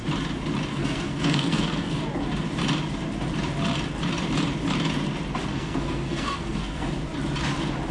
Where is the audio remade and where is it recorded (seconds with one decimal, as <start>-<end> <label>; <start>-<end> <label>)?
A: 0.0-0.7 recorded; 0.7-2.0 remade; 2.0-5.5 recorded; 5.5-6.9 remade; 6.9-7.9 recorded